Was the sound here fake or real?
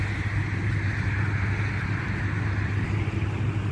real